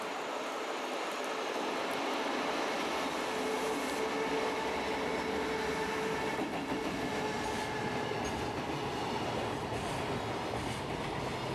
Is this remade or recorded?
recorded